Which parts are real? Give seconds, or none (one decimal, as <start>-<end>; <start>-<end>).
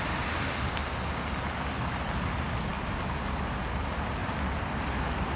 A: 0.8-1.7; 2.7-3.8; 4.2-5.0